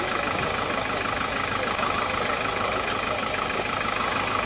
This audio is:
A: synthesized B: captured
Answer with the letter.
B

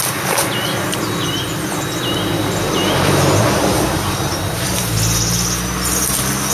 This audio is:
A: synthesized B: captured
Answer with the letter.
B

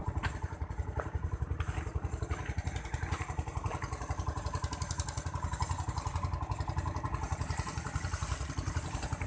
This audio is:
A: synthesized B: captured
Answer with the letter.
B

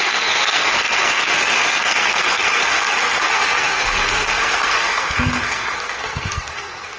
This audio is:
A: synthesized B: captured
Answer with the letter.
A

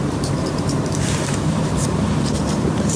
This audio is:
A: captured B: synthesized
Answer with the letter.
B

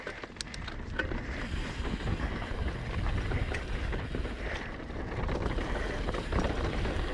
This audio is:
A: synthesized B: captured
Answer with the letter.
B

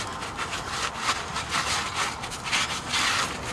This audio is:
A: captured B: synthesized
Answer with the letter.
A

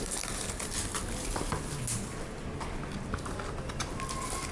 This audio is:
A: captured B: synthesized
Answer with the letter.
A